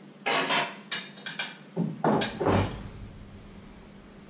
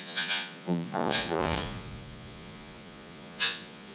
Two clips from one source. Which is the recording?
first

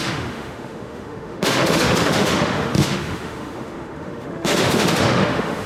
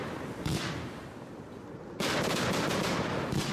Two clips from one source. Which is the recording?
second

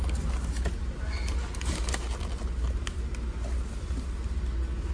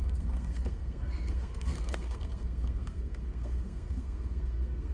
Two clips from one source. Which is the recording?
first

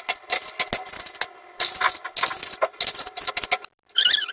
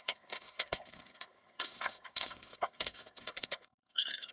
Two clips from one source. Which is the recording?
first